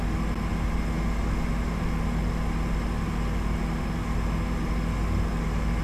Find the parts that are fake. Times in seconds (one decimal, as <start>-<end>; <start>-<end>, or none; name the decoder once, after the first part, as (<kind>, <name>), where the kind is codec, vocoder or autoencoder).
none

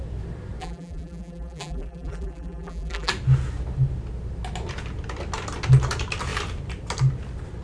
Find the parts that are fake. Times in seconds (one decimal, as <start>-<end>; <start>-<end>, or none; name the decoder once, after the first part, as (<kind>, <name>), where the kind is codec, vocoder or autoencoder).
0.6-3.1 (vocoder, BigVGAN v2)

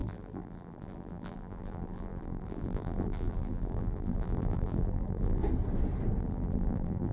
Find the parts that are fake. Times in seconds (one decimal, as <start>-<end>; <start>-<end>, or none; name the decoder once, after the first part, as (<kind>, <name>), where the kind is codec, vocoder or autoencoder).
0.0-5.4 (vocoder, BigVGAN v2); 6.2-7.1

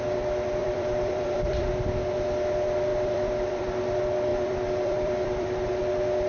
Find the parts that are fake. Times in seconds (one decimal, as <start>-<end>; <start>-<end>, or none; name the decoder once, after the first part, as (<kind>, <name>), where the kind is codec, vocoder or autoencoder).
0.6-1.7 (vocoder, BigVGAN v2); 2.9-3.6; 4.3-5.8

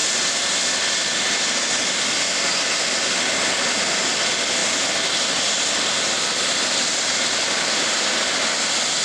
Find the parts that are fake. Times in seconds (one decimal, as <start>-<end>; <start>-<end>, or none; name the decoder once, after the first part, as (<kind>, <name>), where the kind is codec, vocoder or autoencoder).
none

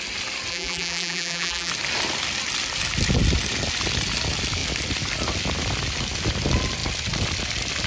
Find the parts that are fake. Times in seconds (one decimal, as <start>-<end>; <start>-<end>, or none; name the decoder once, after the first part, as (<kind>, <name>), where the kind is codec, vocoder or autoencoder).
0.5-1.7 (vocoder, BigVGAN v2)